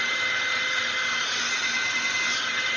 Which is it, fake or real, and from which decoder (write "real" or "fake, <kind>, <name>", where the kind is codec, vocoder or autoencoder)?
real